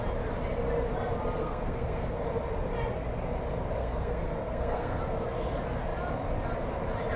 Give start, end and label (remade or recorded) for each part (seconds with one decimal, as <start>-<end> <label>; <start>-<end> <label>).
0.0-1.4 recorded; 1.4-2.2 remade; 2.2-3.8 recorded; 3.8-5.0 remade; 5.0-7.2 recorded

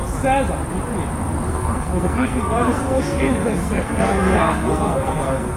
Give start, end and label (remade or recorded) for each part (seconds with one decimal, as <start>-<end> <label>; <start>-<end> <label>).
0.0-1.5 recorded; 1.5-5.6 remade

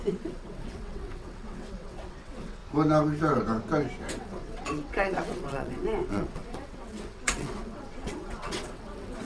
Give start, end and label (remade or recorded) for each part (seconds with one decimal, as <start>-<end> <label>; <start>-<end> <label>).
0.0-2.6 remade; 2.6-4.1 recorded; 4.1-9.2 remade

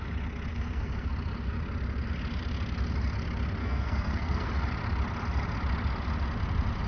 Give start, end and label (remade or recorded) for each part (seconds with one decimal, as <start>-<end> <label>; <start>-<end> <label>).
0.0-0.5 recorded; 0.5-1.1 remade; 1.1-3.6 recorded; 3.6-4.5 remade; 4.5-6.9 recorded

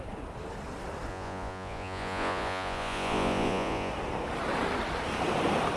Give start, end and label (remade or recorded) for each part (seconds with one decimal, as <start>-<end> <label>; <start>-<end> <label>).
0.0-1.1 recorded; 1.1-3.9 remade; 3.9-5.8 recorded

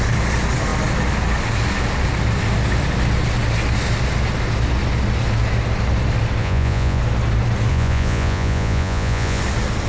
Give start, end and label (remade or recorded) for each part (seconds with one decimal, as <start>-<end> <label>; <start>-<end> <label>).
0.0-6.4 recorded; 6.4-7.0 remade; 7.0-7.7 recorded; 7.7-9.4 remade; 9.4-9.9 recorded